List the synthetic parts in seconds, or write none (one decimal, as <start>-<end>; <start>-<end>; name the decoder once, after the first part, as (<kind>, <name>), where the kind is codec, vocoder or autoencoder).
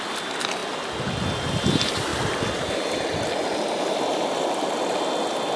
none